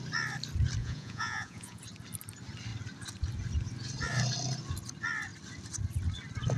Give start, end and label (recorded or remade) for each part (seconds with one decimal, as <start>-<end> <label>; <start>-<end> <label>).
0.0-0.8 recorded; 0.8-1.8 remade; 1.8-6.6 recorded